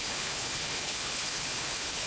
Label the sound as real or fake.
fake